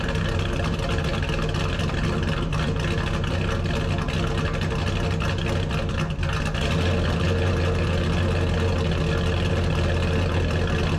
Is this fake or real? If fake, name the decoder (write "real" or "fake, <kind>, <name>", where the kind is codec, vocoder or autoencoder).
real